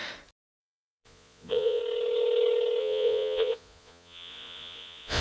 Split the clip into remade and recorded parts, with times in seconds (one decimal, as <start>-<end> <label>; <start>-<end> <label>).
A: 0.0-0.6 recorded; 0.6-1.8 remade; 1.8-2.8 recorded; 2.8-5.2 remade